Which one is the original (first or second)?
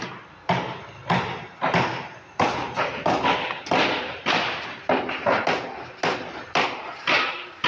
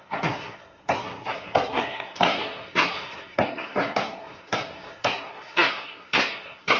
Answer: first